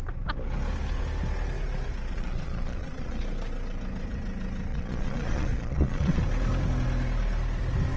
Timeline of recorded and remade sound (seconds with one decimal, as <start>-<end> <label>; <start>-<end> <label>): 0.0-2.1 recorded; 2.1-3.2 remade; 3.2-4.7 recorded; 4.7-6.2 remade; 6.2-8.0 recorded